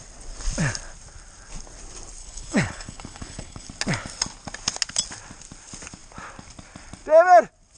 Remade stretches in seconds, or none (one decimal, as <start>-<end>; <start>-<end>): 2.2-3.7